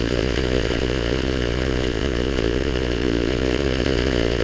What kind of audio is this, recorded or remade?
remade